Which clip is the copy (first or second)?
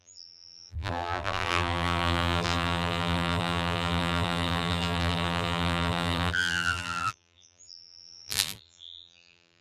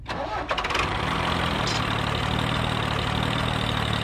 first